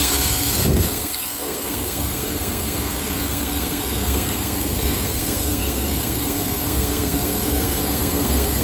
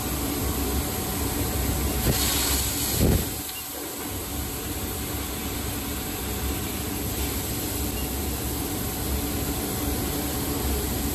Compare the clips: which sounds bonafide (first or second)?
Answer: second